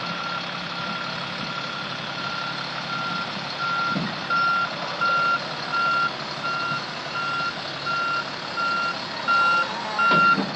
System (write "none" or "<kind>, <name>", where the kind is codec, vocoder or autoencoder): none